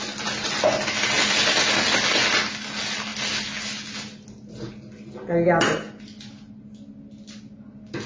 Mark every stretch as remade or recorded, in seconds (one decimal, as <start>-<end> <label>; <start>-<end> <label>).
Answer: 0.0-8.1 recorded